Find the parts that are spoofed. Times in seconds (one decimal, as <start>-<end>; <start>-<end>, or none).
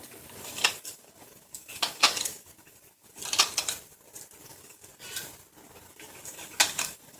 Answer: 0.0-3.2; 4.4-4.9; 5.9-7.2